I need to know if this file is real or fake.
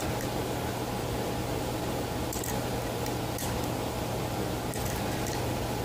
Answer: real